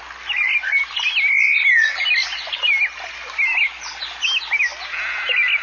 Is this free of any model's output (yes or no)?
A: yes